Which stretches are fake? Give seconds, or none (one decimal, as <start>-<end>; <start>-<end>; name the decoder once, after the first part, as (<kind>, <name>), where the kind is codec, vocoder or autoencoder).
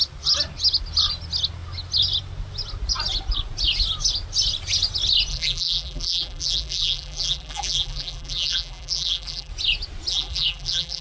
5.3-9.5 (vocoder, BigVGAN v2); 10.1-11.0